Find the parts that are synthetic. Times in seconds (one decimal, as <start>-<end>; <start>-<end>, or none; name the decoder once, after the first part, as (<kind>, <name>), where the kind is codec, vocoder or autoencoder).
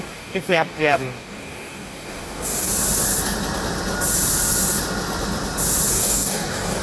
0.0-2.7 (codec, DAC); 5.9-6.8